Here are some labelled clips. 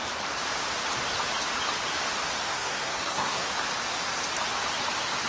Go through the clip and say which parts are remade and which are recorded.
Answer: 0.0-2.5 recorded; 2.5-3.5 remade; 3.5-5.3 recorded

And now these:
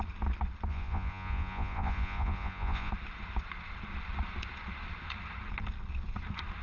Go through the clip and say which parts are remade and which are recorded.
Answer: 0.0-0.7 recorded; 0.7-2.9 remade; 2.9-6.6 recorded

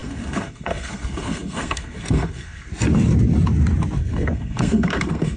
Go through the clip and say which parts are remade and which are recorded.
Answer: 0.0-2.7 remade; 2.7-4.0 recorded; 4.0-5.4 remade